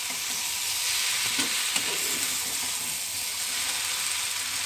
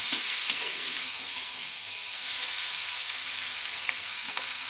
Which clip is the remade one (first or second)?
second